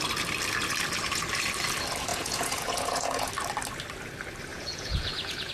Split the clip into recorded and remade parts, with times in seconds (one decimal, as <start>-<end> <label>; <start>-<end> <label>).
0.0-2.1 recorded; 2.1-3.3 remade; 3.3-4.5 recorded; 4.5-5.5 remade